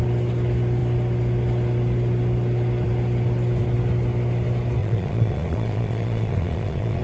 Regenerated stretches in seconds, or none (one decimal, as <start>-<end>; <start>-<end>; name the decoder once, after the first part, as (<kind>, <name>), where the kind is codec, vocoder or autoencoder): 4.8-7.0 (vocoder, Vocos)